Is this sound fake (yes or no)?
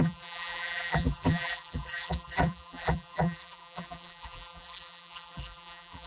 yes